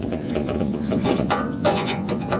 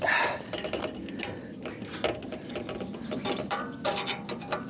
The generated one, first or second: first